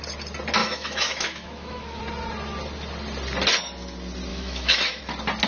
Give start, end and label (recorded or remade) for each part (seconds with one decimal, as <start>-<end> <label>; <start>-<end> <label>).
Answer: 0.0-0.6 recorded; 0.6-2.0 remade; 2.0-4.3 recorded; 4.3-5.0 remade; 5.0-5.5 recorded